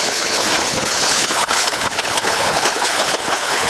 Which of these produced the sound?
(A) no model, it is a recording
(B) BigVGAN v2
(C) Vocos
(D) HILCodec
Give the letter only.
D